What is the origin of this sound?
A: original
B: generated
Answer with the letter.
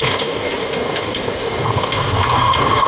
B